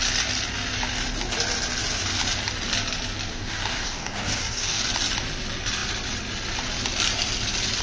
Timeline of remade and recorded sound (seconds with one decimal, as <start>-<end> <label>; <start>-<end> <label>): 0.0-3.3 recorded; 3.3-4.8 remade; 4.8-7.8 recorded